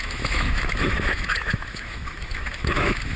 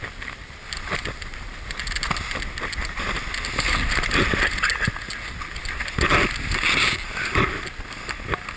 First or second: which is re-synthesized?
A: first